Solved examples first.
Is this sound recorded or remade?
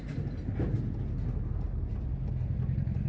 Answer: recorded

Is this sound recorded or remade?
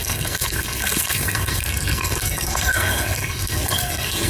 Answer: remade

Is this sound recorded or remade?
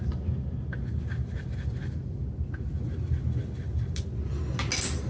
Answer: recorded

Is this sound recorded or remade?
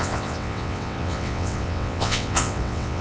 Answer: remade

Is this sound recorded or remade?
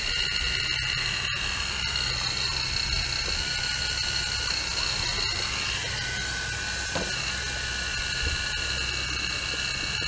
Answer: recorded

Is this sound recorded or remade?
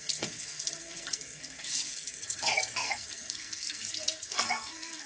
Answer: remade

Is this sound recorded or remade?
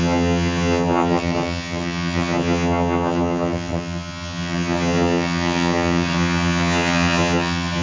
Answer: remade